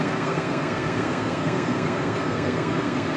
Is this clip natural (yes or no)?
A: no